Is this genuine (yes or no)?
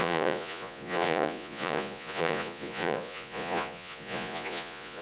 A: no